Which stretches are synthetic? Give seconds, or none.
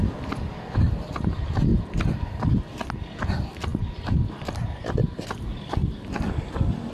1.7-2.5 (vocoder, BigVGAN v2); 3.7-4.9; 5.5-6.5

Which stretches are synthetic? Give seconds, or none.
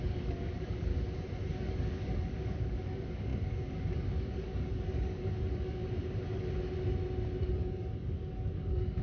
0.0-0.9 (codec, DAC); 1.5-5.8; 7.5-9.0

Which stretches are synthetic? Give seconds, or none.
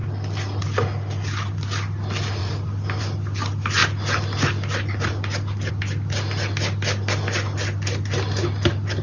2.4-3.0 (vocoder, BigVGAN v2)